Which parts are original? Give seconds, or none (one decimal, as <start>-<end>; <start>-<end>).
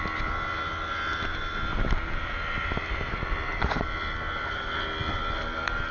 0.0-5.9